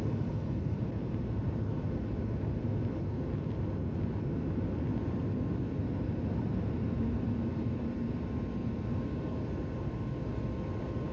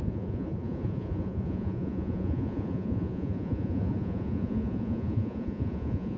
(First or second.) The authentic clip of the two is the first